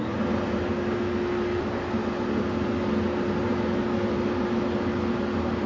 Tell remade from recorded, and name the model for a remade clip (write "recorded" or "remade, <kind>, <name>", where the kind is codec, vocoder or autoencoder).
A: recorded